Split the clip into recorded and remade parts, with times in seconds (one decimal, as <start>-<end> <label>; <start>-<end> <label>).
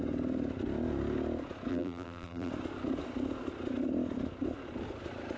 0.0-1.7 recorded; 1.7-2.5 remade; 2.5-5.4 recorded